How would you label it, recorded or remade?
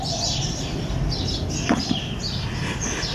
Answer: recorded